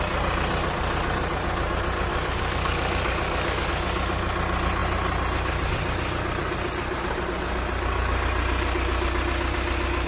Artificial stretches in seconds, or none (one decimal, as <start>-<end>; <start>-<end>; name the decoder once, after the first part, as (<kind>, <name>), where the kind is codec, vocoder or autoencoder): 2.1-3.7 (codec, DAC)

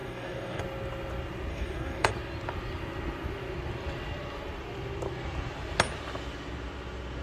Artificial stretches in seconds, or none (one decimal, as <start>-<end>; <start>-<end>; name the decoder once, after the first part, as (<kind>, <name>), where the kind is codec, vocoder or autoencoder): 0.0-0.6 (codec, DAC); 1.5-2.1

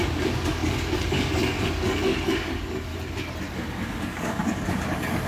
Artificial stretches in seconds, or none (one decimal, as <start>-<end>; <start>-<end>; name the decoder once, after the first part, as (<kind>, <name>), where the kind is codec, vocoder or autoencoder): 0.0-2.9 (codec, DAC); 3.5-5.3